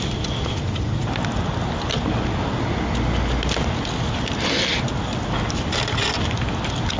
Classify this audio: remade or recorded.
recorded